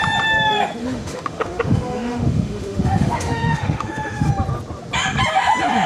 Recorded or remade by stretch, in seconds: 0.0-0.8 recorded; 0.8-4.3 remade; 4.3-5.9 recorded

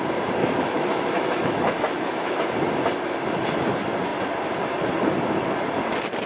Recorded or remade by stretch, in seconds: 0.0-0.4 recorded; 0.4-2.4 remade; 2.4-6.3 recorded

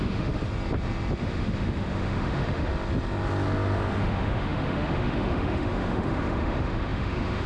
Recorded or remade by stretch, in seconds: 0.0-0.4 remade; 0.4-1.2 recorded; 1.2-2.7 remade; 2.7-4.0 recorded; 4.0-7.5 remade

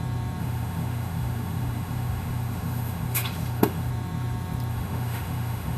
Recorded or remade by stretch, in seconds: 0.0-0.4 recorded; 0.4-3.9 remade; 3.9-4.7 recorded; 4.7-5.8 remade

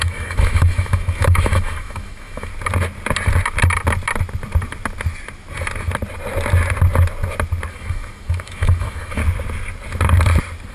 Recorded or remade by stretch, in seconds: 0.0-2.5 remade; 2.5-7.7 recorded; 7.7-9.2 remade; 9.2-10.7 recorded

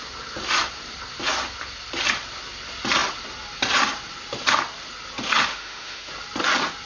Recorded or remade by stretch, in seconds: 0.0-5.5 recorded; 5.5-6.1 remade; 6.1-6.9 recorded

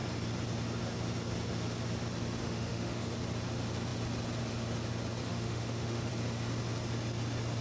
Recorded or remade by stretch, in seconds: 0.0-2.4 recorded; 2.4-3.1 remade; 3.1-5.3 recorded; 5.3-6.1 remade; 6.1-7.6 recorded